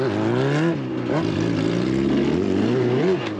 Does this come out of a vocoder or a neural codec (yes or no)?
no